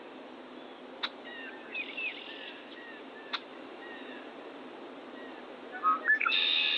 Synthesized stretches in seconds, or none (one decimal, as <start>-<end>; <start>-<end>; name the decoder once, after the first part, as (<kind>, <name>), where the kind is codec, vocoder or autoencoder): 0.0-0.7 (vocoder, BigVGAN v2); 1.3-2.1; 2.9-3.5; 6.1-6.8